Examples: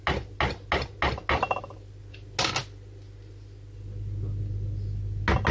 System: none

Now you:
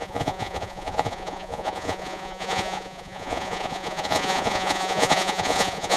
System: vocoder, Vocos